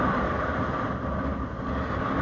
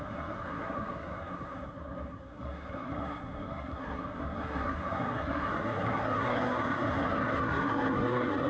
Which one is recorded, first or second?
first